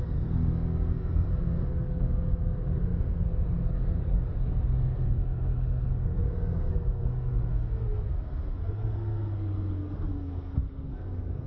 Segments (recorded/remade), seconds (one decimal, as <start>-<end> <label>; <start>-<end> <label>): 0.0-11.5 remade